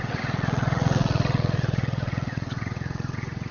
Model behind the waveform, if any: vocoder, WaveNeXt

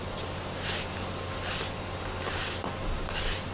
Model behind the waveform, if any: none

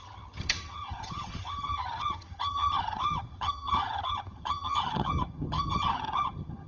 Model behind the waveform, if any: vocoder, HiFi-GAN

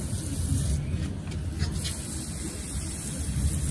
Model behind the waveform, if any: none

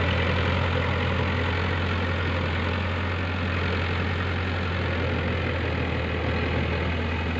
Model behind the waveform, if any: none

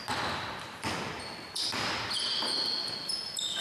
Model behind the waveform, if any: none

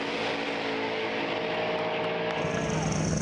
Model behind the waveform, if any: none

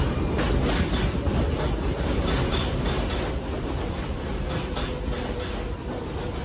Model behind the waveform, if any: none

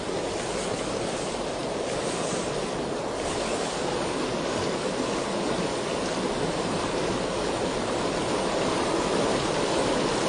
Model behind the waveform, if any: none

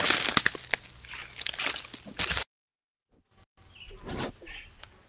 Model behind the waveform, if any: none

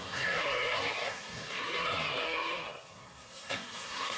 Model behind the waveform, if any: codec, SNAC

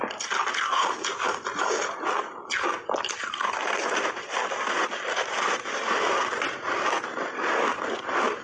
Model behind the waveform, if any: none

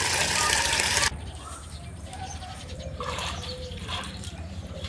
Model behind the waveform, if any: vocoder, BigVGAN v2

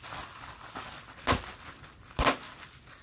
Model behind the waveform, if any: none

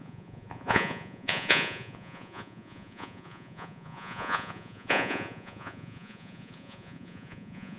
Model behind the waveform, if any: vocoder, Vocos